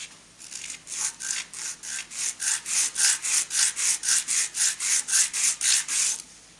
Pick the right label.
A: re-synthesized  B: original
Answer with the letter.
B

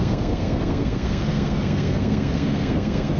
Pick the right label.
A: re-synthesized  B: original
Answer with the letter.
A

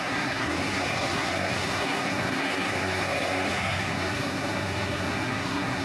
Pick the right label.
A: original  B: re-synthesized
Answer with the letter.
B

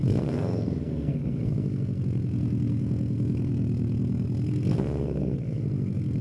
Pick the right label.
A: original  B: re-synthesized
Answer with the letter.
B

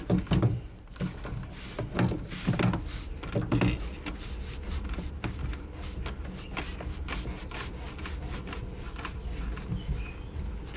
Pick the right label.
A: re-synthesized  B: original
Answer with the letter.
B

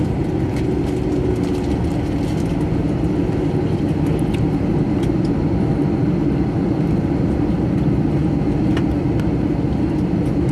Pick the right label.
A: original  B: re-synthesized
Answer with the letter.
A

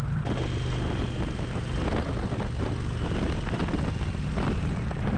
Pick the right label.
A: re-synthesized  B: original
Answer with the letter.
B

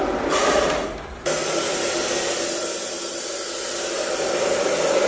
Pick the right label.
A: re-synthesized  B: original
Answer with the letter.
B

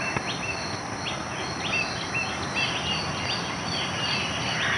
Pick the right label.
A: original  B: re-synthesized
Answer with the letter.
A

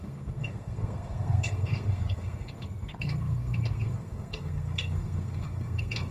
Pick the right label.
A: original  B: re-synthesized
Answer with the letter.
B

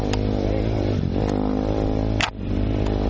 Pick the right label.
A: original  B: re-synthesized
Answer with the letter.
A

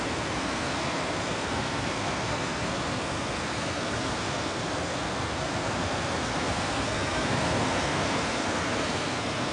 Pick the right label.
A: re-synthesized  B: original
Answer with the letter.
A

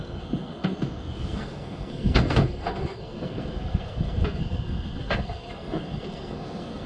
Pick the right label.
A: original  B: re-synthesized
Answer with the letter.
B